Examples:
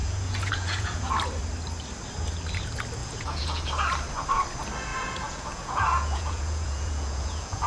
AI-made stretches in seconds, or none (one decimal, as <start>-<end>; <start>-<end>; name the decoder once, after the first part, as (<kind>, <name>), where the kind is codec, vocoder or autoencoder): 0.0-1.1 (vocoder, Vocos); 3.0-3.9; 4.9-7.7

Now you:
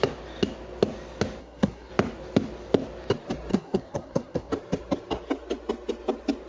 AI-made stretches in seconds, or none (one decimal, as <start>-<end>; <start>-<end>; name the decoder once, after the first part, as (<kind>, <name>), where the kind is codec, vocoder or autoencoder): 1.4-1.9 (codec, SNAC); 3.5-4.5

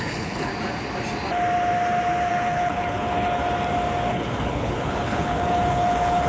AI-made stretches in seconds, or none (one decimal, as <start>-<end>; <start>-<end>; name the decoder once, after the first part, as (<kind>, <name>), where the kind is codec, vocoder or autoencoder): 0.0-0.5 (codec, HILCodec); 2.3-3.4; 4.1-6.3